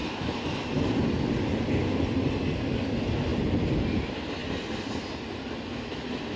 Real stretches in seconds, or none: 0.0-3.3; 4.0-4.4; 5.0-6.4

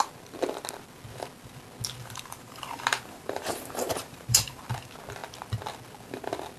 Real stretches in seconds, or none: 0.0-2.0; 4.6-6.6